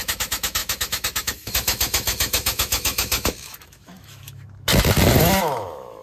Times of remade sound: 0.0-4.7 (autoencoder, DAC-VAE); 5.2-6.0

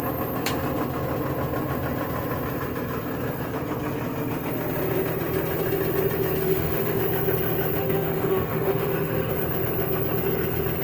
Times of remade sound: 6.4-7.0 (autoencoder, DAC-VAE); 7.8-9.3

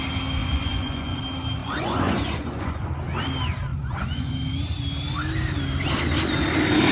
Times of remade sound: 0.4-1.2 (vocoder, Vocos); 1.6-2.9; 3.7-4.3

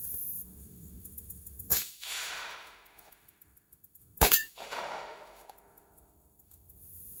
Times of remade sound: 0.0-7.2 (autoencoder, DAC-VAE)

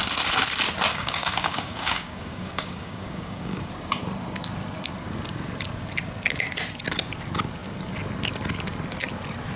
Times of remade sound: 0.9-3.7 (codec, DAC)

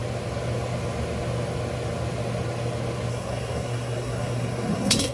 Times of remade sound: 3.1-5.1 (codec, SNAC)

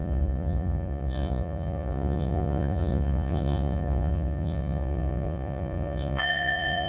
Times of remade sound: 0.0-6.9 (vocoder, Vocos)